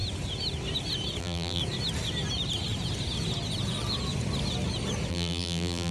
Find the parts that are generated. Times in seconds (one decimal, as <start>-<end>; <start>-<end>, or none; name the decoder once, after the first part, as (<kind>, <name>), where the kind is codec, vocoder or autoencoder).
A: 1.2-1.6 (vocoder, BigVGAN v2); 5.1-5.9